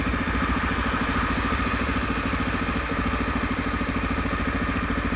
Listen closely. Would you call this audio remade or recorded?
recorded